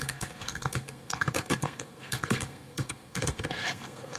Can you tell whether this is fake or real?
fake